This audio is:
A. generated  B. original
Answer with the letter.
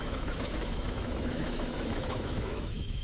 A